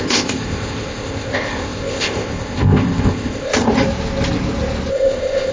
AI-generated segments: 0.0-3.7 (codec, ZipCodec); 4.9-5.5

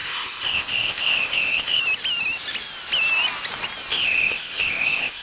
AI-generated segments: 0.0-1.8 (codec, ZipCodec); 3.9-5.2

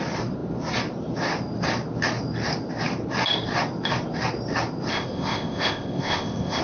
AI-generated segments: 4.9-6.6 (codec, ZipCodec)

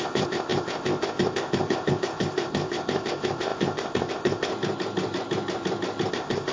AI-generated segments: 0.0-4.5 (codec, ZipCodec); 6.1-6.5

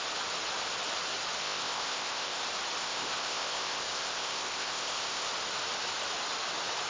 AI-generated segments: 1.4-2.4 (codec, ZipCodec); 2.8-5.3

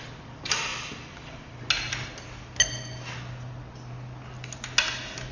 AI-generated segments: none

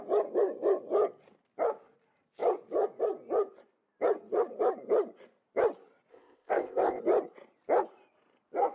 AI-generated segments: 6.1-7.0 (codec, ZipCodec)

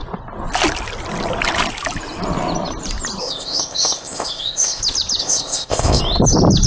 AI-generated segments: 3.2-4.8 (codec, ZipCodec); 5.2-6.0